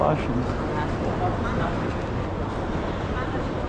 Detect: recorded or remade recorded